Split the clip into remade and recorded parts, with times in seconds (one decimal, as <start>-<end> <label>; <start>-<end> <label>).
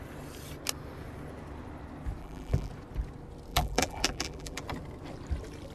0.0-2.2 recorded; 2.2-2.7 remade; 2.7-3.5 recorded; 3.5-4.6 remade; 4.6-5.7 recorded